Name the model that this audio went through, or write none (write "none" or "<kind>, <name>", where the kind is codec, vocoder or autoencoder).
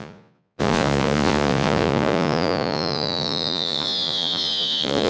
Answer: vocoder, Vocos